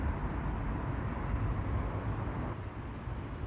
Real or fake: real